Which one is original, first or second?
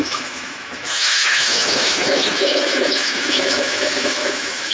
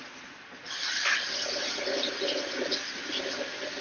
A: second